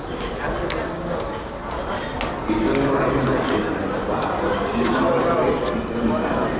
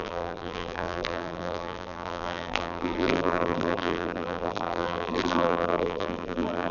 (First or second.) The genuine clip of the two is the first